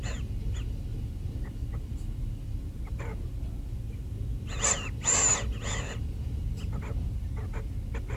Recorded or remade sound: recorded